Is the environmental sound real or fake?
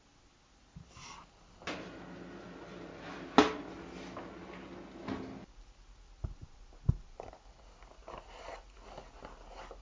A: real